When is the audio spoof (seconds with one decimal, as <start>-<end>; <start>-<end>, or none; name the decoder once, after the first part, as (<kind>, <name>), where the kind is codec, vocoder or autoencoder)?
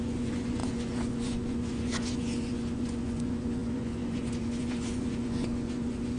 0.0-6.2 (vocoder, Vocos)